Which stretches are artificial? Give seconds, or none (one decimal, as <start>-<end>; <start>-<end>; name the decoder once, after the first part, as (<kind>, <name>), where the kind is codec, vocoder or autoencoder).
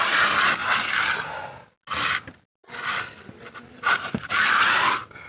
none